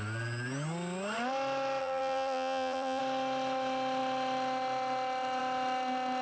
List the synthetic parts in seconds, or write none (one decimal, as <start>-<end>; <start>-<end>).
1.8-3.0